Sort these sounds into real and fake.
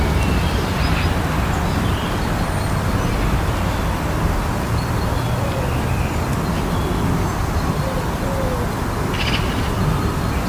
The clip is real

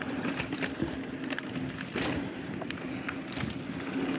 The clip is real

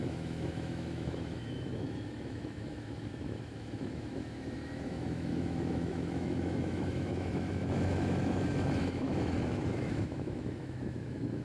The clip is fake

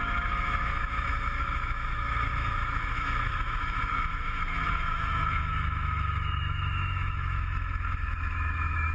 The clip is fake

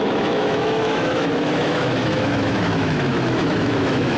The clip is fake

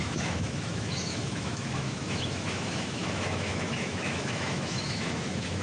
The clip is fake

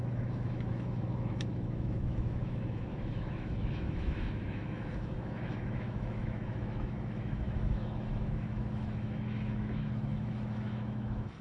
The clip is fake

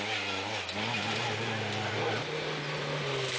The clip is real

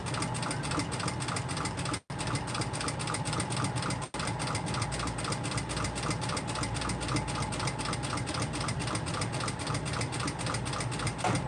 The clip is real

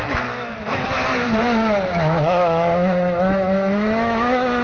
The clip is fake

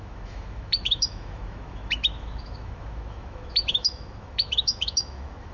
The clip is fake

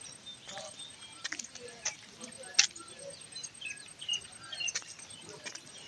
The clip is real